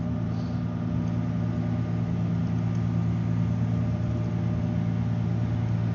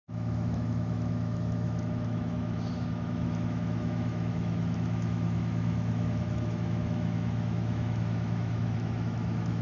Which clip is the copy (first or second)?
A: second